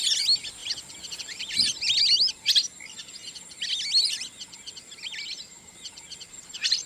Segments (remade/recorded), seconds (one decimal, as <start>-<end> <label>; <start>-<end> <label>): 0.0-6.9 recorded